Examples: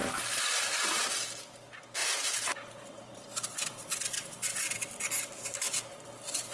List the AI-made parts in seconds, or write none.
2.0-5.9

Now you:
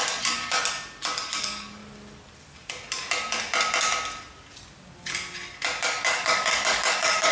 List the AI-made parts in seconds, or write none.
0.0-0.6; 1.4-1.8; 5.8-7.3

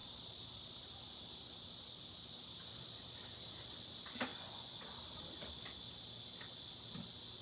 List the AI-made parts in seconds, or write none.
4.3-4.8

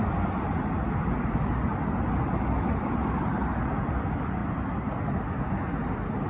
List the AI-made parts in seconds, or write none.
none

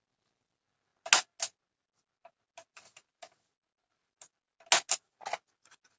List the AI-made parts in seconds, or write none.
none

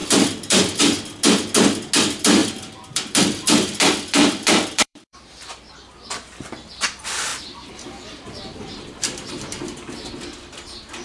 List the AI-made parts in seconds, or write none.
0.0-0.8; 2.4-5.3; 7.3-9.3